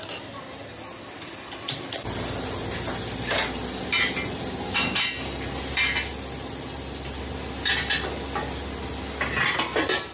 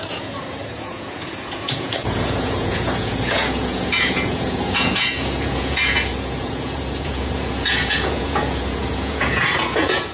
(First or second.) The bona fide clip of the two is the first